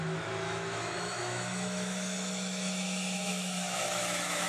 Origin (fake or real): fake